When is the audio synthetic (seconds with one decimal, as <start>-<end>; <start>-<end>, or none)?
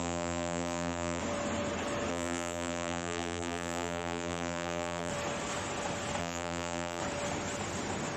0.0-1.2; 2.1-5.1; 6.2-7.0